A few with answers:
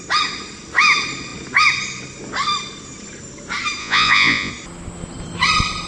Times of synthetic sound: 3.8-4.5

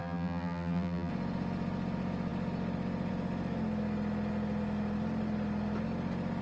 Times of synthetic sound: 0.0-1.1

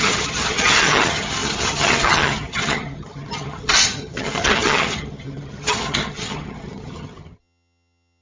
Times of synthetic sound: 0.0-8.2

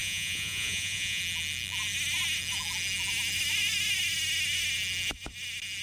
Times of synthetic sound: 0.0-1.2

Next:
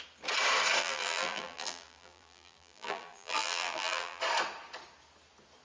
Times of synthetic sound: 0.8-4.2